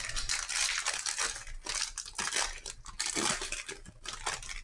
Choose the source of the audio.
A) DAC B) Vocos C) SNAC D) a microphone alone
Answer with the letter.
D